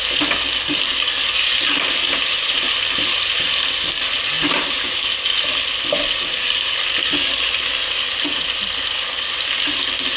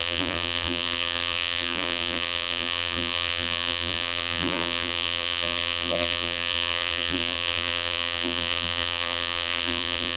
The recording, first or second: first